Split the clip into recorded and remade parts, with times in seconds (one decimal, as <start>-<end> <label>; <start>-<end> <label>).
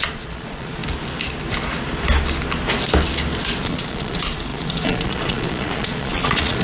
0.0-0.8 remade; 0.8-3.6 recorded; 3.6-6.6 remade